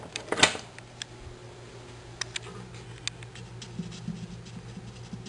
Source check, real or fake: real